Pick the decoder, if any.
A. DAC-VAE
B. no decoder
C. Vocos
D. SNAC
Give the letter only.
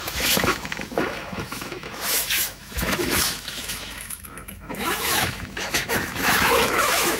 A